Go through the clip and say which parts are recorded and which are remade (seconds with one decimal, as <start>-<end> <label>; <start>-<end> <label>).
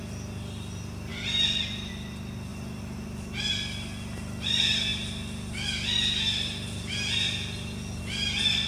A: 0.0-8.7 recorded